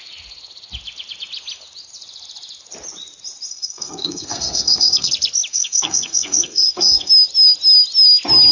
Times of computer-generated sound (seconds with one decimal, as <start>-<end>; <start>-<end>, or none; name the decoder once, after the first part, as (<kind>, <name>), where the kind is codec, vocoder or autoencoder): 3.5-5.1 (codec, SNAC); 5.5-7.1